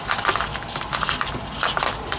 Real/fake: real